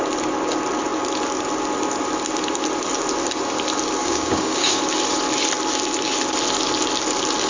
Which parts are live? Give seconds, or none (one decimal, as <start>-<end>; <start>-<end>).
0.0-4.0; 4.8-7.5

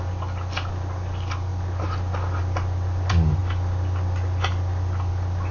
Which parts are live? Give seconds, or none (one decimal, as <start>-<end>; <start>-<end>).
0.0-5.5

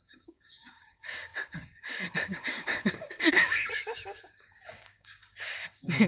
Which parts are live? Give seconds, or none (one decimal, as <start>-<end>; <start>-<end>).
none

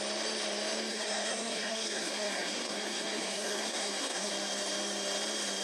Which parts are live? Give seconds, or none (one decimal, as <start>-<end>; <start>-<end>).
0.0-0.9; 4.3-5.6

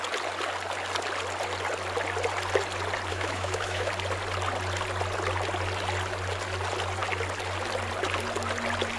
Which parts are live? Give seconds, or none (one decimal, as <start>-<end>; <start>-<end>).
0.0-3.1; 3.9-9.0